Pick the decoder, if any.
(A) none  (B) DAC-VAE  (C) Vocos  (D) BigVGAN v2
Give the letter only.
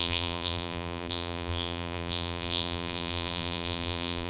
D